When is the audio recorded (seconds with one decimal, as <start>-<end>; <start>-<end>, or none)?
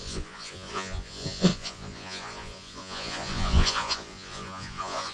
none